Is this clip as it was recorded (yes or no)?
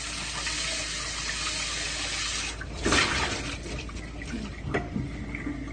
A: yes